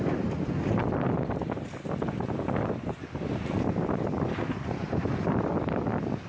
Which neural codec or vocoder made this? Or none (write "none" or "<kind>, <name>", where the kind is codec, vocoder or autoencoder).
none